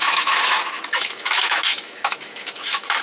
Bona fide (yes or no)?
no